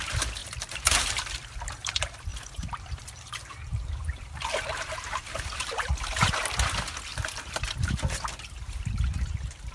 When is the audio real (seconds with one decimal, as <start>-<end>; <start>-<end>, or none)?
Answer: 0.0-0.4; 1.9-2.3; 6.5-7.1; 7.9-9.7